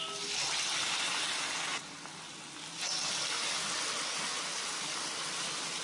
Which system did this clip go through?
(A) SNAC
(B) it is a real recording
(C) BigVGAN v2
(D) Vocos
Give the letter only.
B